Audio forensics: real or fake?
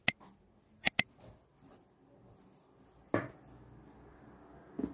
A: real